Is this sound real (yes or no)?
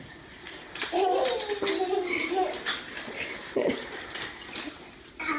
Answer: yes